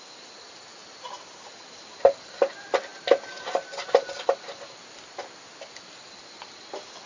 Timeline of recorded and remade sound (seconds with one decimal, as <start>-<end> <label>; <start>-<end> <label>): 0.0-7.1 recorded